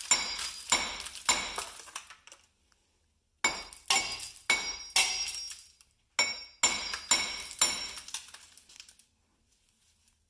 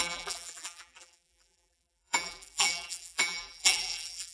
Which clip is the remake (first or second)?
second